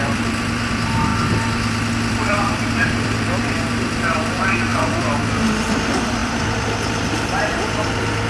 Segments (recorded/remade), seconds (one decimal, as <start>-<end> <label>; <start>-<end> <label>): 0.0-1.1 remade; 1.1-1.9 recorded; 1.9-8.3 remade